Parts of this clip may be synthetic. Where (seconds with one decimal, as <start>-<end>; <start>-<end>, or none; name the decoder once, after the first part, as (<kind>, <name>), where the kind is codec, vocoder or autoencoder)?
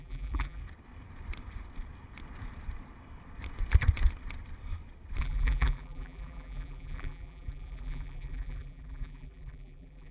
0.0-0.6 (vocoder, BigVGAN v2); 5.2-10.1